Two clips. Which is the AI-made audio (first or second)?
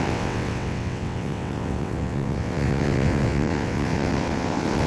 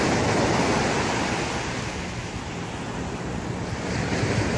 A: first